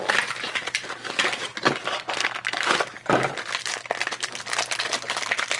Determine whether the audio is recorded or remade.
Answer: recorded